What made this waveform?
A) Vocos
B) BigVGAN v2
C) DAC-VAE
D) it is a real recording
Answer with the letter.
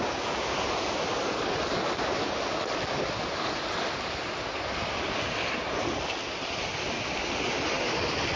D